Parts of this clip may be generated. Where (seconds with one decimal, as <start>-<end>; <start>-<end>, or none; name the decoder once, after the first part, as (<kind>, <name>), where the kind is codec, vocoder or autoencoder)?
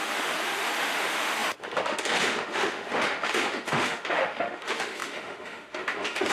0.0-6.3 (autoencoder, DAC-VAE)